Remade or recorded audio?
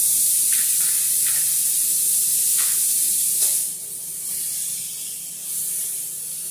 remade